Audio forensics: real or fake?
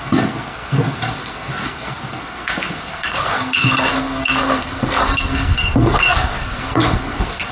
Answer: fake